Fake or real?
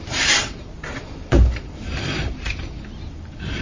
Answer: fake